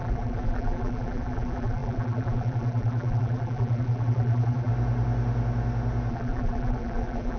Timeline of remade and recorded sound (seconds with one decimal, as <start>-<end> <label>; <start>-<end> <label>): 0.0-4.7 remade; 4.7-6.1 recorded; 6.1-7.4 remade